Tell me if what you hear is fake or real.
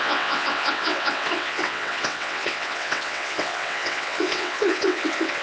fake